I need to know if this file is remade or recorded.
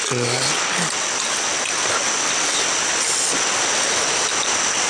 recorded